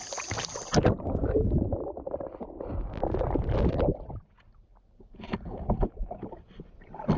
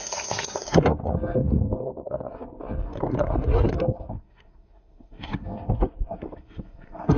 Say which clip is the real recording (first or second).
first